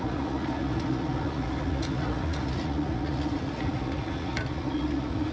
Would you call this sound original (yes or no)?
no